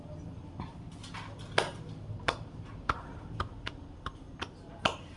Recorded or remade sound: recorded